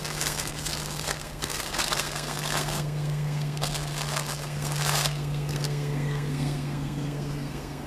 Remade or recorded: remade